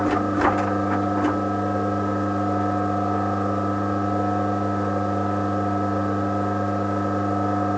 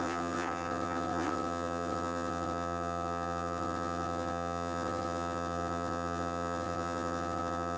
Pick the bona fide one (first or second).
first